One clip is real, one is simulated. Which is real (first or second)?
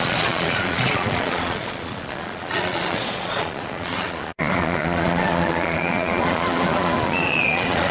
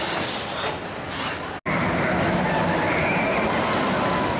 second